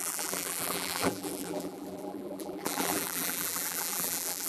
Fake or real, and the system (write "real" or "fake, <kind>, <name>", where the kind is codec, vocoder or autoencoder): fake, vocoder, BigVGAN v2